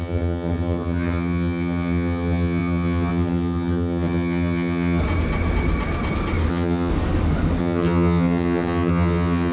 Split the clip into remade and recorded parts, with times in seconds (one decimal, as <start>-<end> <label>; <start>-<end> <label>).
0.0-5.0 remade; 5.0-6.5 recorded; 6.5-6.9 remade; 6.9-7.6 recorded; 7.6-9.5 remade